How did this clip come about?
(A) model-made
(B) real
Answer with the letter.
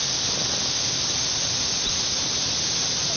B